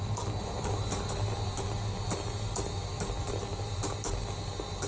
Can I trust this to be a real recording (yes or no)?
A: yes